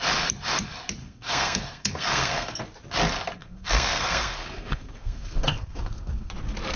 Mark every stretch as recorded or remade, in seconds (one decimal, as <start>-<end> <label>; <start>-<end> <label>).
0.0-1.0 recorded; 1.0-2.6 remade; 2.6-3.4 recorded; 3.4-6.3 remade; 6.3-6.8 recorded